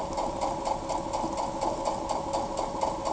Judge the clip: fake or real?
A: real